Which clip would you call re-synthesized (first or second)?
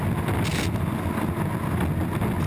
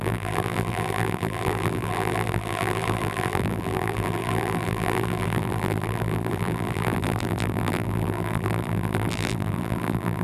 second